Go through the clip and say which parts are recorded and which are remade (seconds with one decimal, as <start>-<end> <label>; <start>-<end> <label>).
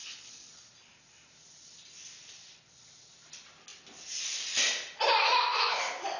0.0-0.5 remade; 0.5-6.2 recorded